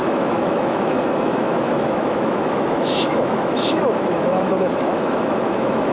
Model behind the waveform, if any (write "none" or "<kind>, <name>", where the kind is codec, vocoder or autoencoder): autoencoder, DAC-VAE